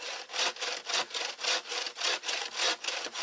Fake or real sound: real